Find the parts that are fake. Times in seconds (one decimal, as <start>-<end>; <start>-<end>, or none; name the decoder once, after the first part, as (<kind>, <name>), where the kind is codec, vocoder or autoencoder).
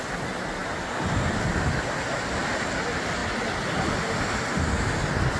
none